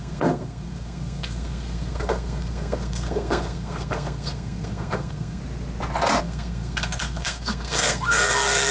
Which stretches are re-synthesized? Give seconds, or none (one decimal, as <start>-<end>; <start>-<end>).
0.0-5.4; 6.2-8.7